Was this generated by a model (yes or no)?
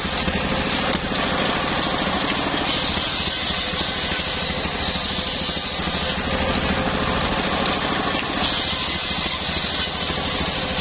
no